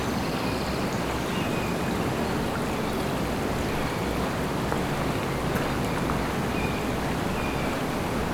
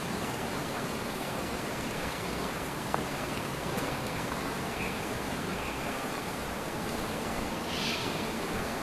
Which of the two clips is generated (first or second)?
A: second